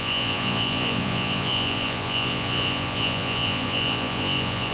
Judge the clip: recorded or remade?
remade